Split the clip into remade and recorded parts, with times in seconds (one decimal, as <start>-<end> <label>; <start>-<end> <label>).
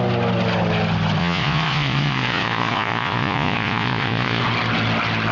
0.0-1.2 recorded; 1.2-4.4 remade; 4.4-5.3 recorded